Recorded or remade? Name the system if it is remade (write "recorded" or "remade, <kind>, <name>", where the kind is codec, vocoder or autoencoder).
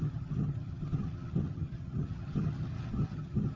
remade, vocoder, HiFi-GAN